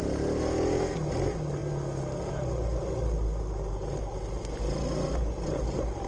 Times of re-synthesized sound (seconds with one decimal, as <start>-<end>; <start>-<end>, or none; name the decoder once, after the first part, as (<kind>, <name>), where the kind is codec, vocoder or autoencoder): none